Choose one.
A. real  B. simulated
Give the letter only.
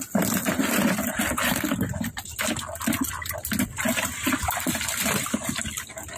A